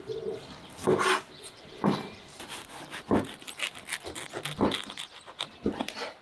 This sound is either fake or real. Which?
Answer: real